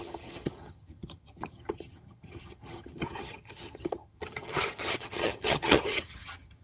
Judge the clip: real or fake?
fake